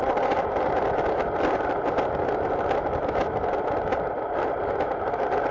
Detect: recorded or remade recorded